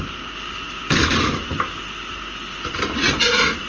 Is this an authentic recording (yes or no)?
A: yes